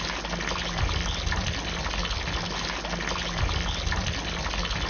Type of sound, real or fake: real